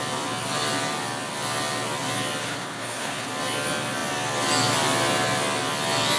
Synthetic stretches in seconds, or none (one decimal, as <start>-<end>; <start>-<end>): 2.4-3.3